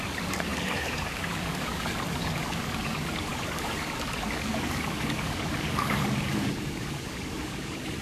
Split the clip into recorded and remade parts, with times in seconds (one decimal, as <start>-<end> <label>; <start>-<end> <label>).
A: 0.0-8.0 remade